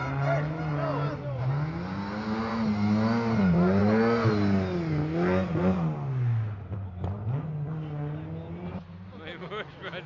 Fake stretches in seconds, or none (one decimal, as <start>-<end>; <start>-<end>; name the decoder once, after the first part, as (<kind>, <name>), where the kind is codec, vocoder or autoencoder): none